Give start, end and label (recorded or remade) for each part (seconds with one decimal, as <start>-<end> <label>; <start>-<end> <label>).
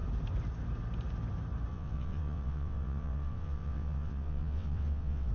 0.0-1.7 recorded; 1.7-5.3 remade